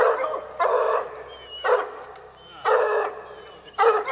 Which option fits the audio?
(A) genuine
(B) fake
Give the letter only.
A